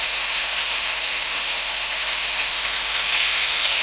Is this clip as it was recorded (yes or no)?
no